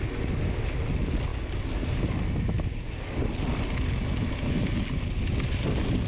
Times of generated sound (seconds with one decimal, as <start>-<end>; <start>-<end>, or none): none